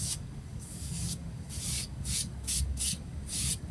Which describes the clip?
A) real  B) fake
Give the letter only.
B